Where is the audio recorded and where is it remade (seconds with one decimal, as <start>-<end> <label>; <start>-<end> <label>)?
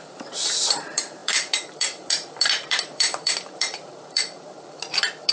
0.0-5.3 remade